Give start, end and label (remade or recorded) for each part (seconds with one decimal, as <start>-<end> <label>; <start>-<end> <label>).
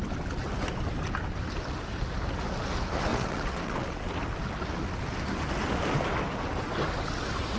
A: 0.0-3.1 recorded; 3.1-4.1 remade; 4.1-7.6 recorded